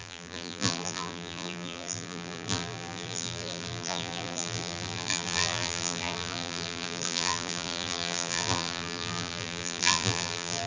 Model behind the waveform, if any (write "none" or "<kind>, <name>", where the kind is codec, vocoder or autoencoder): vocoder, BigVGAN v2